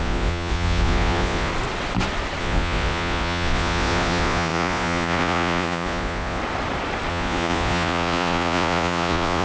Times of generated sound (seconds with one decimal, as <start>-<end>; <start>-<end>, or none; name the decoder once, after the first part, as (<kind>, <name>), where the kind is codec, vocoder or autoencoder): 0.0-1.5 (vocoder, Vocos); 2.4-6.4; 7.1-9.4